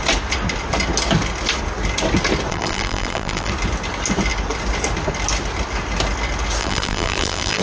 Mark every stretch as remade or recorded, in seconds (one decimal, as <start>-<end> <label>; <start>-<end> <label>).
0.0-2.5 recorded; 2.5-3.5 remade; 3.5-6.6 recorded; 6.6-7.6 remade